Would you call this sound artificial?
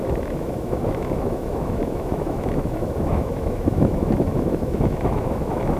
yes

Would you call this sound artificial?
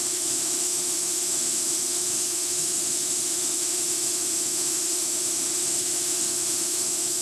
yes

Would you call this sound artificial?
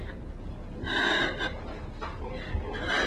no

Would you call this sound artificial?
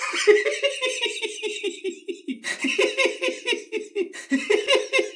no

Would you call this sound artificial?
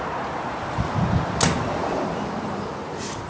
no